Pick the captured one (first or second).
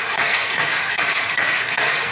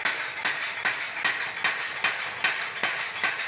second